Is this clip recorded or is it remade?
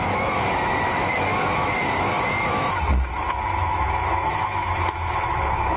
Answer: remade